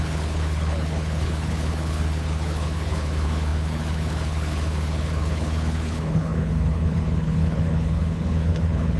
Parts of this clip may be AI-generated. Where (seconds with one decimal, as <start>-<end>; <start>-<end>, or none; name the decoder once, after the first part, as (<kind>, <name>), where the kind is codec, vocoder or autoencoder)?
0.0-9.0 (codec, HILCodec)